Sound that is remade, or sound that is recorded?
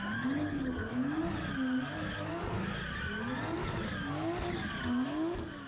recorded